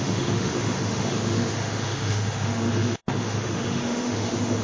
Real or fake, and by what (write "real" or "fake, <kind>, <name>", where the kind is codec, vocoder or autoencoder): fake, autoencoder, DAC-VAE